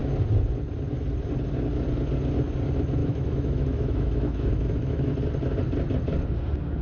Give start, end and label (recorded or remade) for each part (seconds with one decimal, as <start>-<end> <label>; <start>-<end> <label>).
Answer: 0.0-3.0 recorded; 3.0-5.1 remade; 5.1-6.8 recorded